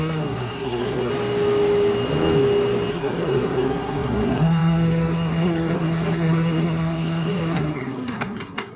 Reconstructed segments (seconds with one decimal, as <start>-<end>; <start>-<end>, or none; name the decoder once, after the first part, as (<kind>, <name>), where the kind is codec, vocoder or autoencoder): 0.0-1.1 (codec, SNAC); 2.9-8.8